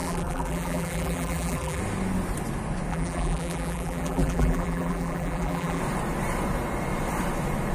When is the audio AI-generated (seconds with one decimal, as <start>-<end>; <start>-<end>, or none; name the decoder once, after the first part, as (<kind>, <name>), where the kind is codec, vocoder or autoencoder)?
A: 0.0-1.8 (vocoder, BigVGAN v2); 2.9-5.8